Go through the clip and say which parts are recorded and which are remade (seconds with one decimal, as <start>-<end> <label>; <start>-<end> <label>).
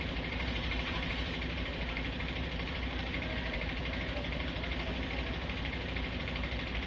0.0-3.8 remade; 3.8-5.3 recorded; 5.3-6.9 remade